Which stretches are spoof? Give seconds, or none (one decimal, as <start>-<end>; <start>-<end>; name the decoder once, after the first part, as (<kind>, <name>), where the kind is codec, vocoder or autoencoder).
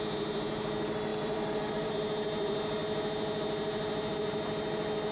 1.1-1.9 (vocoder, BigVGAN v2)